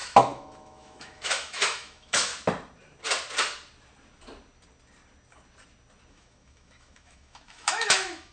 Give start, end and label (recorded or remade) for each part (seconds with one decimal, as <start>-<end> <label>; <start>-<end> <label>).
0.0-2.3 remade; 2.3-6.1 recorded; 6.1-8.3 remade